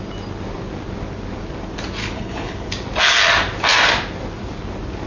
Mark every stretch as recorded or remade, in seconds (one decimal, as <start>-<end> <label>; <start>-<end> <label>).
0.0-2.0 recorded; 2.0-2.7 remade; 2.7-5.1 recorded